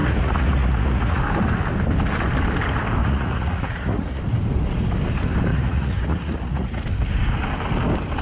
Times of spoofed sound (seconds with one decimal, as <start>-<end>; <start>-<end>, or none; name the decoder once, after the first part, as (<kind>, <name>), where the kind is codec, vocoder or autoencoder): 0.0-1.2 (vocoder, Vocos); 3.0-4.2; 5.5-6.8